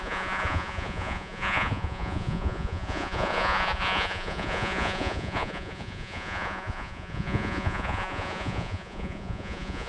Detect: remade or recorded remade